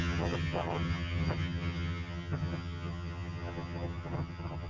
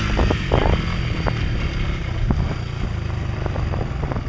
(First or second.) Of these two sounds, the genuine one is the second